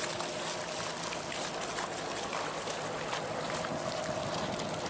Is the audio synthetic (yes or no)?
no